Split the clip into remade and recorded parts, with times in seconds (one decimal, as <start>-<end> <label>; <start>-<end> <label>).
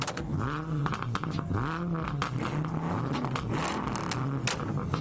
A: 0.0-5.0 recorded